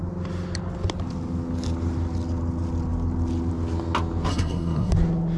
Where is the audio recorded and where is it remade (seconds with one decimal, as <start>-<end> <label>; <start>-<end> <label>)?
0.0-4.3 recorded; 4.3-4.9 remade; 4.9-5.4 recorded

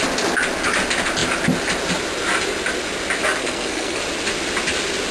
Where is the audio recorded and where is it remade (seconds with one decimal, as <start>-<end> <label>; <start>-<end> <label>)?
0.0-3.4 recorded; 3.4-4.0 remade; 4.0-5.1 recorded

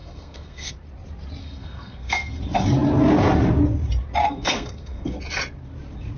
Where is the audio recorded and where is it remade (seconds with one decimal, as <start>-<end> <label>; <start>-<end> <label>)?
0.0-0.7 remade; 0.7-1.4 recorded; 1.4-2.4 remade; 2.4-4.2 recorded; 4.2-5.2 remade; 5.2-6.2 recorded